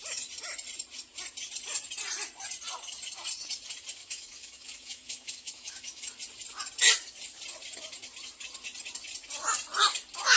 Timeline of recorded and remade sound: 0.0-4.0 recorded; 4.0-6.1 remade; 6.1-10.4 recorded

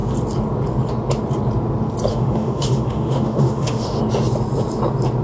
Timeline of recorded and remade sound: 0.0-2.1 recorded; 2.1-4.0 remade; 4.0-5.2 recorded

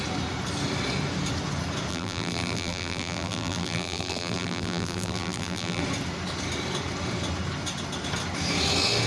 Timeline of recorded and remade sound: 0.0-1.9 recorded; 1.9-5.8 remade; 5.8-9.1 recorded

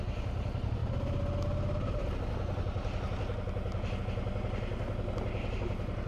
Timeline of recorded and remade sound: 0.0-6.1 recorded

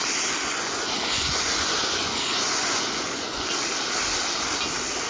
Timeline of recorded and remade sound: 0.0-0.4 recorded; 0.4-3.5 remade; 3.5-5.1 recorded

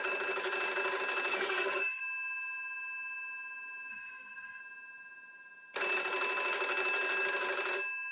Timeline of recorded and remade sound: 0.0-1.3 recorded; 1.3-2.0 remade; 2.0-3.9 recorded; 3.9-4.6 remade; 4.6-8.1 recorded